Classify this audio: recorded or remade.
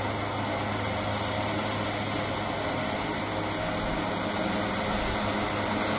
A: recorded